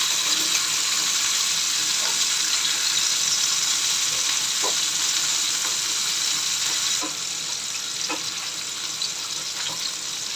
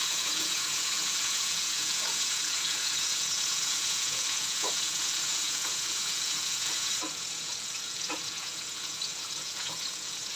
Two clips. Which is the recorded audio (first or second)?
first